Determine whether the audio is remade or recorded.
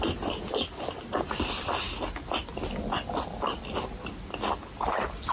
recorded